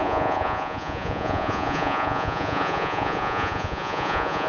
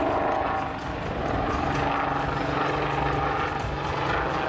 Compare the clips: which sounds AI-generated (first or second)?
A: first